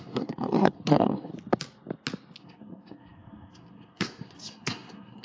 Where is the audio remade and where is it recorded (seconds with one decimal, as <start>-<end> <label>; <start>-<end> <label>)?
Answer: 0.0-1.3 remade; 1.3-2.4 recorded; 2.4-5.2 remade

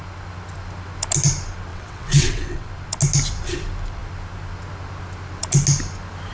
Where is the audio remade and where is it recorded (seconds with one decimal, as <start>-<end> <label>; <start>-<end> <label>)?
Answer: 0.0-1.7 recorded; 1.7-2.7 remade; 2.7-6.3 recorded

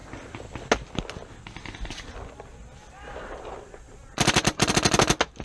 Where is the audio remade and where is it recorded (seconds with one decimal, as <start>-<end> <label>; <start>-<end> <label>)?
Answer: 0.0-2.8 recorded; 2.8-4.7 remade; 4.7-5.4 recorded

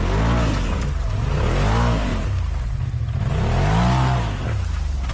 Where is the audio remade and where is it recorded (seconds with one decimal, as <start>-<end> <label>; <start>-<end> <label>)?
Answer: 0.0-5.1 recorded

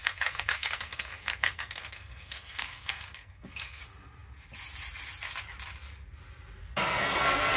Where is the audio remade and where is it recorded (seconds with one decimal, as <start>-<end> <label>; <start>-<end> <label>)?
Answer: 0.0-3.8 remade; 3.8-6.6 recorded; 6.6-7.6 remade

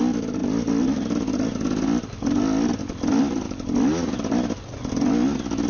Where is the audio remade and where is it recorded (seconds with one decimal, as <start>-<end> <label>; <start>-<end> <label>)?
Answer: 0.0-5.7 recorded

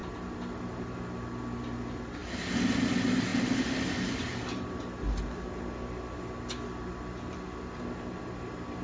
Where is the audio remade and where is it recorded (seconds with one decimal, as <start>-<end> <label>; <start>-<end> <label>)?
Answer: 0.0-8.8 recorded

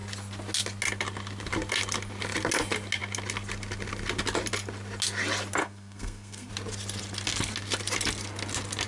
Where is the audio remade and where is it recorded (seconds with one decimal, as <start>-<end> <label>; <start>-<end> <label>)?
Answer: 0.0-5.6 recorded; 5.6-6.5 remade; 6.5-8.9 recorded